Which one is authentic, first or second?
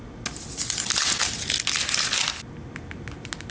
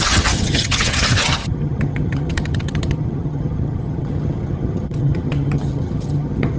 first